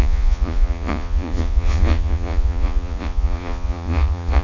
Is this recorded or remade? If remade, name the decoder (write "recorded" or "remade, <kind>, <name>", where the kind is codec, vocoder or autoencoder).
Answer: remade, vocoder, Vocos